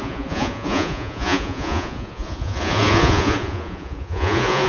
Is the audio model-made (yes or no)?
yes